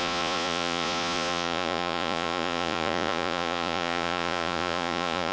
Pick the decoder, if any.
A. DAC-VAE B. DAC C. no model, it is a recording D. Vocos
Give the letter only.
D